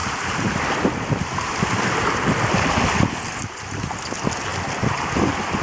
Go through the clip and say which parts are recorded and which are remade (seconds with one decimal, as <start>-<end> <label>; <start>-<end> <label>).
0.0-5.6 recorded